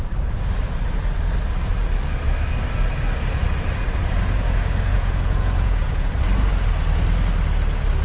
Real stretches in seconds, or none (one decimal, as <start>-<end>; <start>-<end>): 0.0-4.9; 6.1-8.0